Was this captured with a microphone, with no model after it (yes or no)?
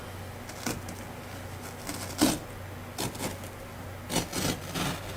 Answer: yes